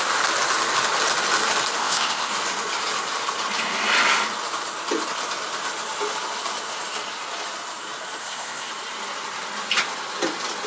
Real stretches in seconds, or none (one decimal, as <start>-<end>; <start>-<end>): 0.0-1.8; 2.3-8.2; 8.7-10.7